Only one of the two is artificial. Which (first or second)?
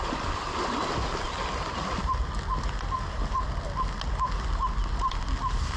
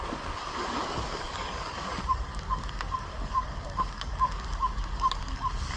second